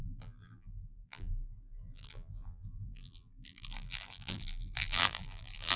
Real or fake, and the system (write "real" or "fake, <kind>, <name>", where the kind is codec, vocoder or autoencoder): fake, vocoder, BigVGAN v2